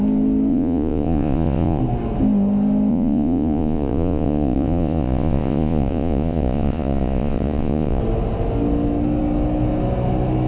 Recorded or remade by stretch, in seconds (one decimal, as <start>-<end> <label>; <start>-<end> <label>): 0.0-0.5 recorded; 0.5-1.8 remade; 1.8-2.9 recorded; 2.9-8.0 remade; 8.0-10.5 recorded